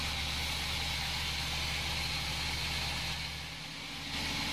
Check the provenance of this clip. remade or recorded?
recorded